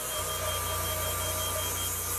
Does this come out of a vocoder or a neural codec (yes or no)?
no